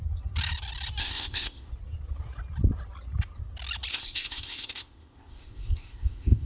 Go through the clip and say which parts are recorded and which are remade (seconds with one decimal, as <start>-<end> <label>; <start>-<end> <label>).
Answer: 0.0-1.0 recorded; 1.0-1.7 remade; 1.7-3.9 recorded; 3.9-6.5 remade